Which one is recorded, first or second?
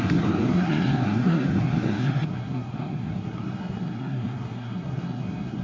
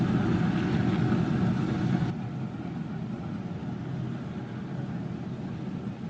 second